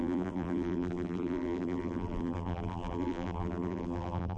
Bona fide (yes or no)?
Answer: no